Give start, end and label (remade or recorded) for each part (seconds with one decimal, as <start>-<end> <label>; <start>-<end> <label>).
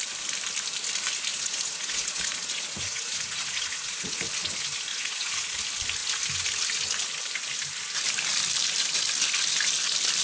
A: 0.0-1.3 recorded; 1.3-4.2 remade; 4.2-4.9 recorded; 4.9-5.6 remade; 5.6-10.2 recorded